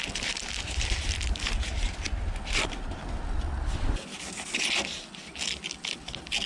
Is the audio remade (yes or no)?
no